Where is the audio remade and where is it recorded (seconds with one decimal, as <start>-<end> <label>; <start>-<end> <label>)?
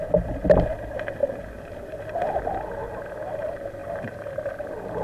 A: 0.0-3.8 recorded; 3.8-4.5 remade; 4.5-5.0 recorded